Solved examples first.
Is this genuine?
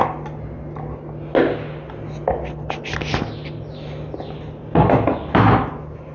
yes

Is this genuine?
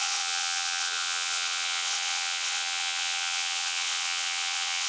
no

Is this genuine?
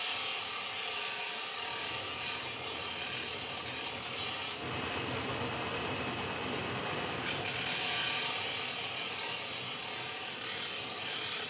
yes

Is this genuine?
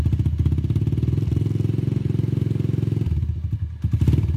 yes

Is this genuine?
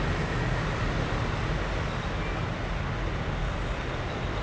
yes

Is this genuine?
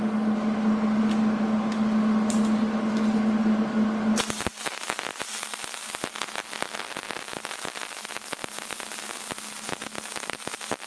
yes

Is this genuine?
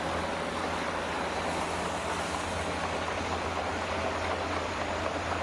yes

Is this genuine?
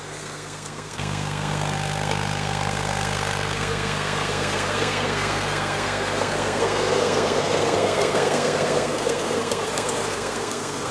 no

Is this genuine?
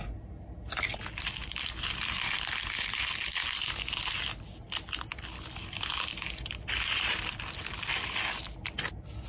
yes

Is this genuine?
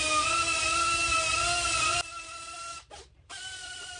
no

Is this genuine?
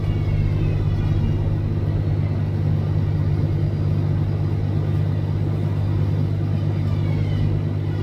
yes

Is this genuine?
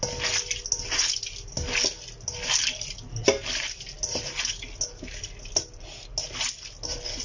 yes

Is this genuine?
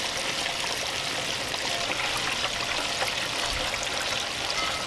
yes